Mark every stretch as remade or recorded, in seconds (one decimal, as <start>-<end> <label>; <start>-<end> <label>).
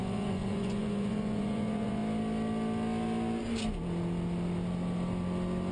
0.0-2.0 remade; 2.0-5.7 recorded